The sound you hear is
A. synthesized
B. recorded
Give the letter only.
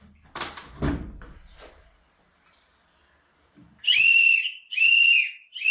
A